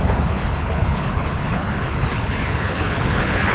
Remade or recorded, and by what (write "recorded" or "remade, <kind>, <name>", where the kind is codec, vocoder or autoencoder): remade, codec, HILCodec